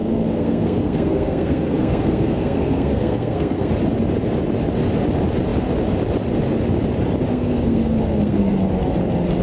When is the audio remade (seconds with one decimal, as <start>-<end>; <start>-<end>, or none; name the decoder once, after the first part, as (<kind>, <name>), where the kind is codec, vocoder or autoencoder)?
0.0-3.7 (codec, SNAC); 7.3-8.5